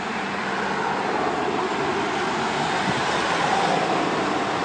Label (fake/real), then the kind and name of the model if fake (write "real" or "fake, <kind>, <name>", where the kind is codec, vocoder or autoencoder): real